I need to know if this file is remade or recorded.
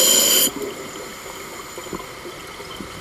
recorded